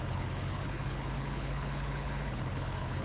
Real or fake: fake